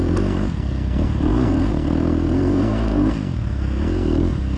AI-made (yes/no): yes